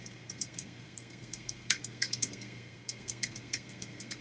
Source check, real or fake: fake